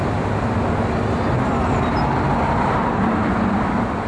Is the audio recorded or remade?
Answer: recorded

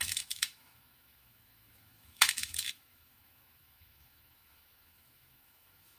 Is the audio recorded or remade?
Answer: remade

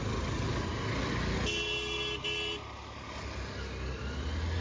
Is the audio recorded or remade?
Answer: recorded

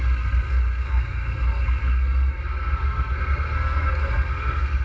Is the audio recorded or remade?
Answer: remade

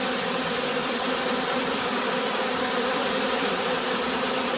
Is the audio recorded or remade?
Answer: remade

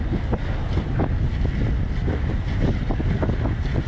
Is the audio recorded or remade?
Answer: recorded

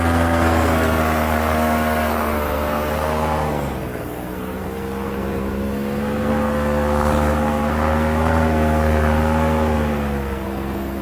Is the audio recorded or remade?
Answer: remade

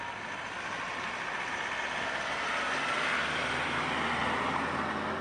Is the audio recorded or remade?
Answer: recorded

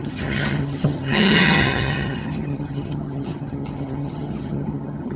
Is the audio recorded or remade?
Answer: remade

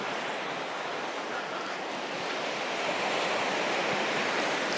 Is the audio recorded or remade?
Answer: recorded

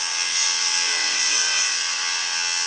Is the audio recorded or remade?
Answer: remade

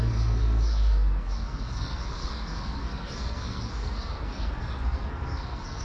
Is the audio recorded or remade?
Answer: remade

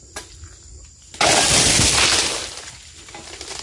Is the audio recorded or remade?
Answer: recorded